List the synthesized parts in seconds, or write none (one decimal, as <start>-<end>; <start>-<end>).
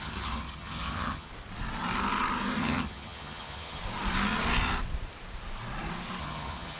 0.0-1.3; 2.6-3.8; 6.2-6.8